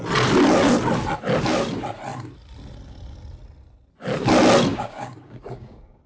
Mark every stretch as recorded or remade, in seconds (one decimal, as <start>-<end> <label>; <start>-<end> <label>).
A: 0.0-4.7 recorded; 4.7-6.1 remade